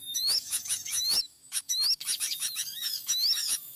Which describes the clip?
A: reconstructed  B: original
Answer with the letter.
A